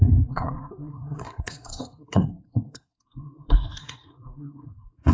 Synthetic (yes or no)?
yes